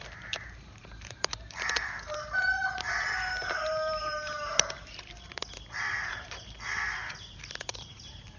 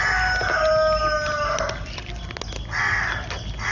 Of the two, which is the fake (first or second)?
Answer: first